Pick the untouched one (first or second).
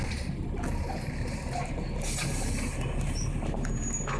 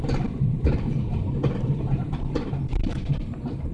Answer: first